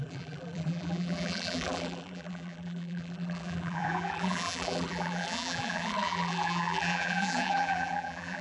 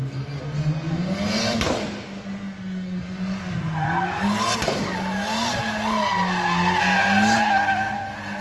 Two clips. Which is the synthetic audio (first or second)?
first